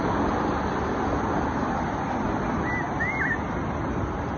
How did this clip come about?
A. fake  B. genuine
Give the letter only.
B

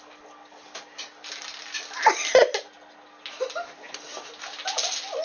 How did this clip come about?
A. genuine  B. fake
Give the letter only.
A